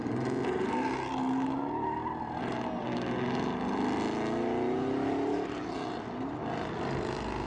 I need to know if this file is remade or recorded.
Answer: recorded